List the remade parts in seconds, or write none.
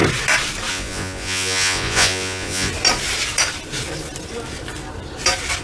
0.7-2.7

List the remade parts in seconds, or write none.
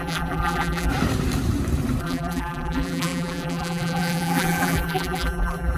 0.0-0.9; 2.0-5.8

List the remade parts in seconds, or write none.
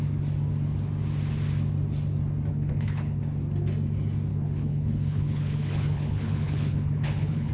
2.5-3.2; 4.3-7.5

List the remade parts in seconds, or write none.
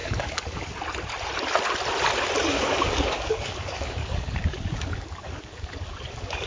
0.0-0.8; 2.5-6.5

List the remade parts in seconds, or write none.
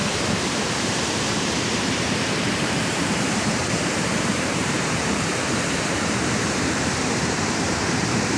0.0-8.4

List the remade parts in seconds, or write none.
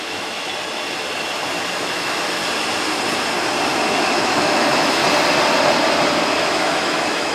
0.0-0.5; 1.8-2.4; 4.2-5.0; 6.4-7.3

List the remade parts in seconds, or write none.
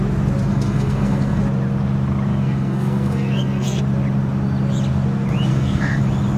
0.5-1.4; 2.3-3.8; 5.5-6.0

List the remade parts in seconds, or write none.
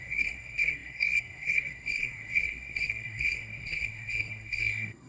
0.0-5.1